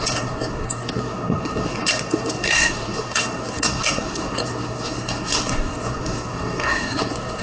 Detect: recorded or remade remade